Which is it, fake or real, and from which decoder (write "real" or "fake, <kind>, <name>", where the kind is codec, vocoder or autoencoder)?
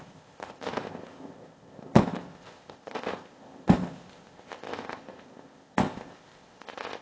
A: fake, codec, ZipCodec